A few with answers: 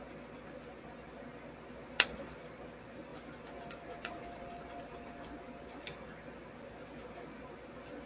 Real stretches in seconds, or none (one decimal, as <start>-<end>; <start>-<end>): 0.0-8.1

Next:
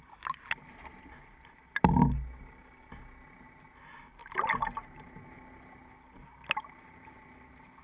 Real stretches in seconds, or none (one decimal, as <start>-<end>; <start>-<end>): 0.0-7.8

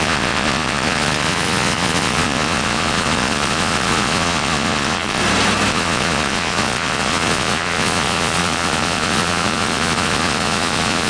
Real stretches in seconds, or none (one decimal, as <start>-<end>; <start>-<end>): 5.2-5.7